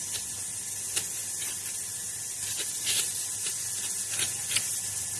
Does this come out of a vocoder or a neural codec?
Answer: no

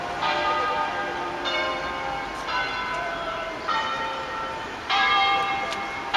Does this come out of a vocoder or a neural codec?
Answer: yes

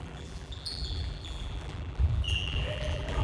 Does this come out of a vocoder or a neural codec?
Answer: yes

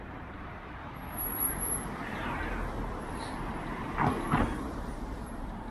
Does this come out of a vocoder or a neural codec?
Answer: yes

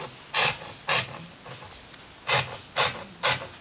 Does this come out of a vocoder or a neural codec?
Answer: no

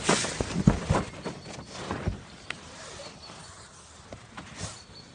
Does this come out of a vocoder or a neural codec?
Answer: no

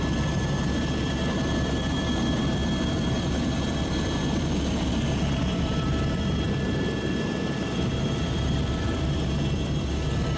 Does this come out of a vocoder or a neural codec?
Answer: yes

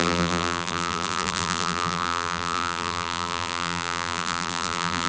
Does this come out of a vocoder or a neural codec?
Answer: yes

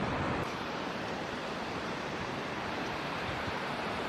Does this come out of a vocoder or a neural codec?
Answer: yes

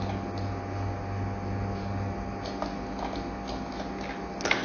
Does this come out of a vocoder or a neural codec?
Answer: no